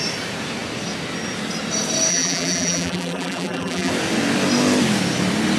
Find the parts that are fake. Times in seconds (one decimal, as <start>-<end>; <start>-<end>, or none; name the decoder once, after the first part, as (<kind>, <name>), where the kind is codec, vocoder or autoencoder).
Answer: 2.1-3.9 (vocoder, BigVGAN v2)